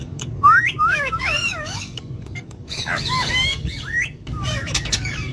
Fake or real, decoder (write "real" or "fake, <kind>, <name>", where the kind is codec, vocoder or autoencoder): fake, codec, DAC